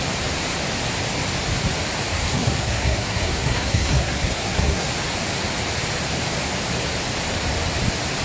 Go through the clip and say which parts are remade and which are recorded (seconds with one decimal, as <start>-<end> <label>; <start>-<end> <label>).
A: 0.0-2.1 recorded; 2.1-4.9 remade; 4.9-8.2 recorded